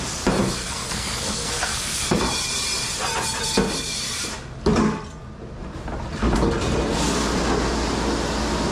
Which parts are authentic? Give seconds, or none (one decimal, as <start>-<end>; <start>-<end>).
0.0-0.6; 2.2-8.7